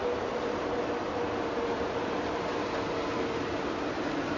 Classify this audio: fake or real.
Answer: real